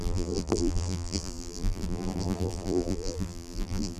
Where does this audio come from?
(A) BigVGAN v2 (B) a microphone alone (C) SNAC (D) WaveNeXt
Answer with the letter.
A